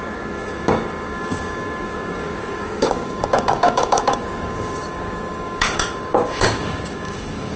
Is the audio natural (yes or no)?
no